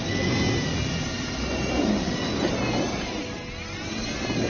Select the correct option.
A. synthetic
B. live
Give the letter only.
B